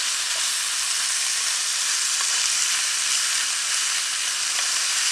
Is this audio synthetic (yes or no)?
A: no